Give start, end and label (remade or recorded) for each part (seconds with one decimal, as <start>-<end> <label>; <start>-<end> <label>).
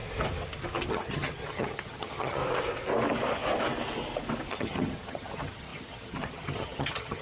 0.0-0.9 recorded; 0.9-2.4 remade; 2.4-4.5 recorded; 4.5-7.2 remade